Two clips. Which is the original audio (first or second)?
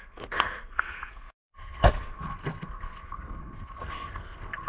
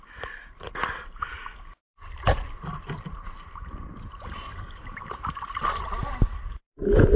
second